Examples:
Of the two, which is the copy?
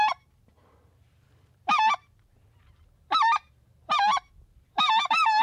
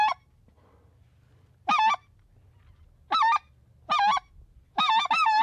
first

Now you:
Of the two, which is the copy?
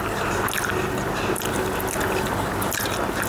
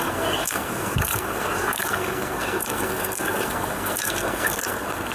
second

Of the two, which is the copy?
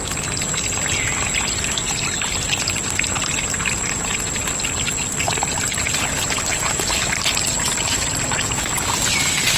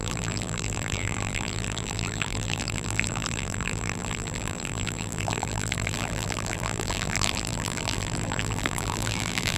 second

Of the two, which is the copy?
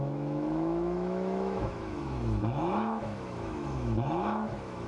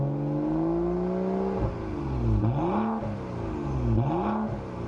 first